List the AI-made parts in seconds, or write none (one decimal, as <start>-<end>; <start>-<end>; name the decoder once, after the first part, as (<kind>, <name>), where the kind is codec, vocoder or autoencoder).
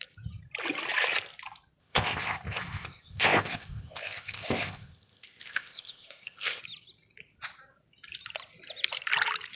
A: 1.8-6.6 (codec, ZipCodec)